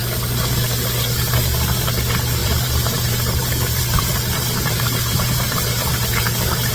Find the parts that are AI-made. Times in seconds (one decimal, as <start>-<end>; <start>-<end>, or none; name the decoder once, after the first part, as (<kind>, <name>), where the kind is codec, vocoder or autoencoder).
2.4-6.7 (vocoder, BigVGAN v2)